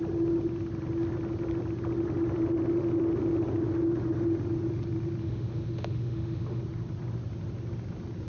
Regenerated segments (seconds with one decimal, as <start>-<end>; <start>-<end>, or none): 5.2-6.6